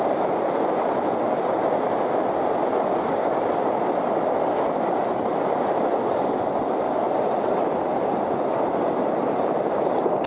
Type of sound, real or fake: real